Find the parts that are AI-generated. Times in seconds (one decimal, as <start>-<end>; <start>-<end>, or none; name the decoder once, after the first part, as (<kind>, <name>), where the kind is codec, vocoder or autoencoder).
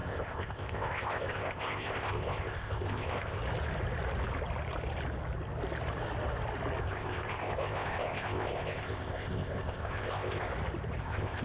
0.0-3.4 (codec, ZipCodec); 6.8-10.5; 11.0-11.4